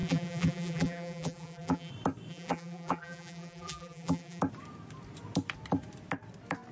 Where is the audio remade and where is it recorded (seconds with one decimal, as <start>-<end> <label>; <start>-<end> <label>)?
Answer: 0.0-1.9 remade; 1.9-2.3 recorded; 2.3-4.4 remade; 4.4-6.7 recorded